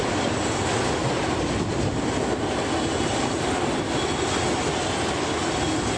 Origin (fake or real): real